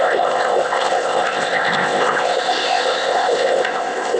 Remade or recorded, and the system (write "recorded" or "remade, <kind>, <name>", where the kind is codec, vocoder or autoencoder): remade, codec, ZipCodec